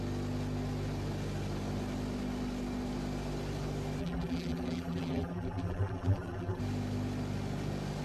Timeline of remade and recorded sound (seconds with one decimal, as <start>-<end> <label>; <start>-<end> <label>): 0.0-4.0 recorded; 4.0-6.6 remade; 6.6-8.0 recorded

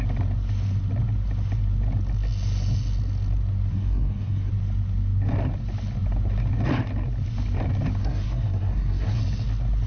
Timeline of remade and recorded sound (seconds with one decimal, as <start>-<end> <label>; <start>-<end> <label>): 0.0-3.7 recorded; 3.7-4.5 remade; 4.5-8.0 recorded; 8.0-9.2 remade; 9.2-9.9 recorded